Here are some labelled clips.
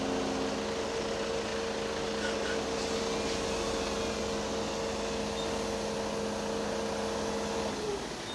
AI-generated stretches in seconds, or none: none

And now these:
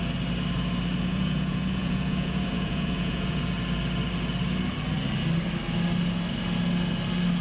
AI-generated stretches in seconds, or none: 1.1-3.4 (vocoder, Vocos)

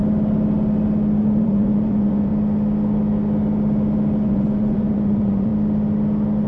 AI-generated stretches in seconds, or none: 1.2-2.3 (vocoder, Vocos); 4.2-5.5

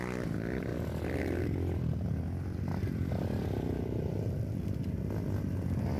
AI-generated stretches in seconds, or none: none

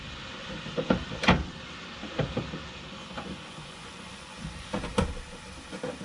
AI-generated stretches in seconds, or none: 3.0-4.8 (vocoder, Vocos)

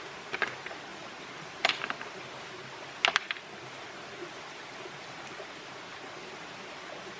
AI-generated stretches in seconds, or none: none

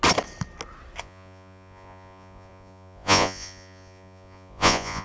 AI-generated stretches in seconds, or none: 1.0-5.0 (vocoder, Vocos)